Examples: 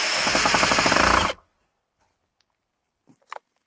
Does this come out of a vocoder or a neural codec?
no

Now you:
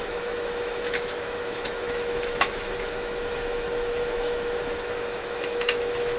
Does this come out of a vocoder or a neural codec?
yes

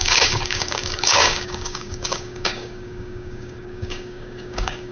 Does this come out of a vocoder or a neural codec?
yes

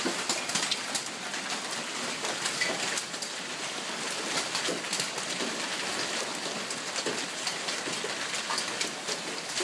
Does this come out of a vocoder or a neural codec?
no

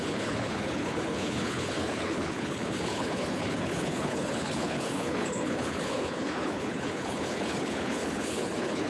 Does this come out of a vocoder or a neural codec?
yes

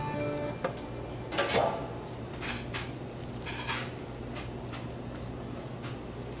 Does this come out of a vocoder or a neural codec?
no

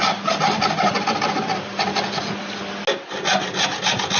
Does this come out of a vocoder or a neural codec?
no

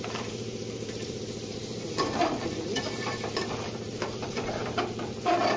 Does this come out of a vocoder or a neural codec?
yes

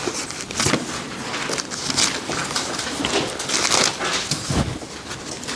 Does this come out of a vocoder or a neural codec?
no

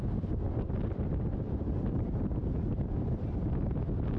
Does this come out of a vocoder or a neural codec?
no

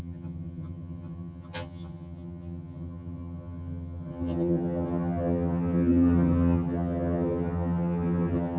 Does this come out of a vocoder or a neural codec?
yes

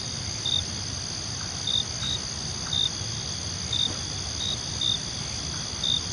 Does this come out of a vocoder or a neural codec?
no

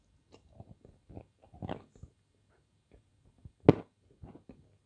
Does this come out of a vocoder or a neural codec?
no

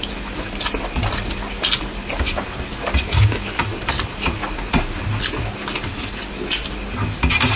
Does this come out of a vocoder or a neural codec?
no